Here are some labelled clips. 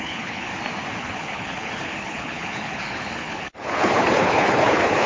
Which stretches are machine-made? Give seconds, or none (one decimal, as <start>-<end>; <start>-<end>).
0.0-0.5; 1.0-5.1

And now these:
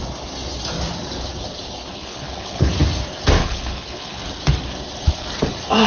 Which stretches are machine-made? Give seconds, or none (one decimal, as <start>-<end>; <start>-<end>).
1.9-2.7; 3.4-4.2

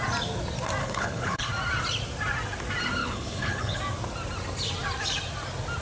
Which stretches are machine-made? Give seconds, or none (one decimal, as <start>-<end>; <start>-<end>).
0.8-1.5; 3.0-3.8

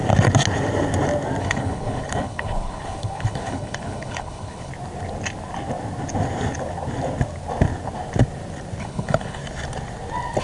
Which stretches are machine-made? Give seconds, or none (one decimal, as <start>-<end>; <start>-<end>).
1.4-4.7; 8.8-9.4

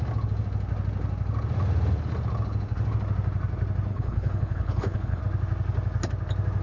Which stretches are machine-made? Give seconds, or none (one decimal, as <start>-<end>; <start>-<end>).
3.9-5.2

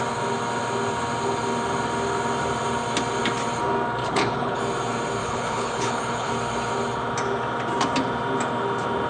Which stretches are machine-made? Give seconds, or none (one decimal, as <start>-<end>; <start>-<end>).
4.0-4.6; 5.2-6.3